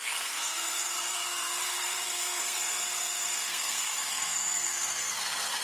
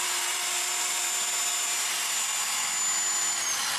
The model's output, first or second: first